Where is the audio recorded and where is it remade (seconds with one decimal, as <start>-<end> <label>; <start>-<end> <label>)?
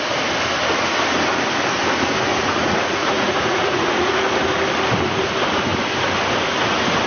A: 0.0-2.3 recorded; 2.3-4.1 remade; 4.1-7.1 recorded